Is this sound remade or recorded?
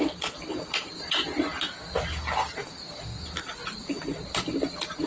recorded